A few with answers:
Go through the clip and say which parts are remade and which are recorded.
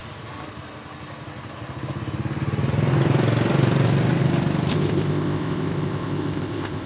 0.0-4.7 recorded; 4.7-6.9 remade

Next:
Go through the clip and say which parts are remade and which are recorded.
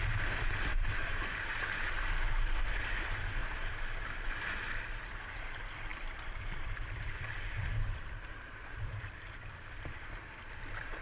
0.0-0.7 recorded; 0.7-1.4 remade; 1.4-3.4 recorded; 3.4-4.8 remade; 4.8-5.9 recorded; 5.9-10.1 remade; 10.1-11.0 recorded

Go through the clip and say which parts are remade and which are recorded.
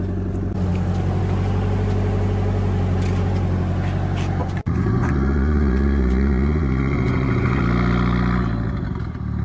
0.0-4.4 recorded; 4.4-7.6 remade; 7.6-9.4 recorded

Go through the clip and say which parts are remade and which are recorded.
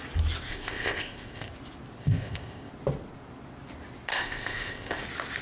0.0-0.5 recorded; 0.5-1.5 remade; 1.5-2.0 recorded; 2.0-2.7 remade; 2.7-4.1 recorded; 4.1-5.0 remade; 5.0-5.4 recorded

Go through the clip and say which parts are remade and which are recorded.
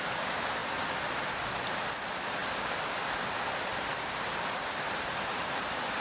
0.0-6.0 recorded